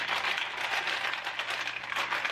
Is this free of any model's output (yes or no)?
yes